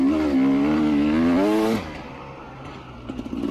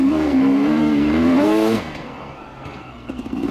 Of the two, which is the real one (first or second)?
first